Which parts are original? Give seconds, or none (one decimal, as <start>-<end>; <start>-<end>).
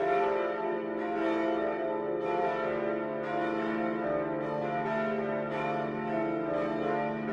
0.0-7.3